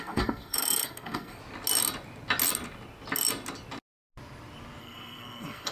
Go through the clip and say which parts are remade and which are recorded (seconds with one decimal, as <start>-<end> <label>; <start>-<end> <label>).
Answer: 0.0-1.4 remade; 1.4-4.8 recorded; 4.8-5.7 remade